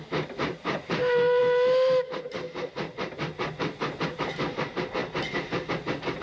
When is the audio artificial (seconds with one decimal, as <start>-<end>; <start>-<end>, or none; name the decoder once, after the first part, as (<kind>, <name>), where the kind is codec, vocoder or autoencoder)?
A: 0.0-5.0 (vocoder, BigVGAN v2)